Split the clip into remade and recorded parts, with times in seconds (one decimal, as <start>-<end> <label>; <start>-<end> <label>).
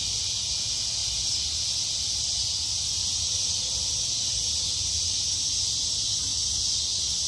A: 0.0-7.3 recorded